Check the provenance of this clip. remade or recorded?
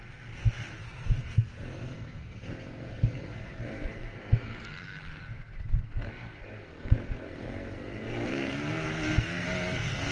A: remade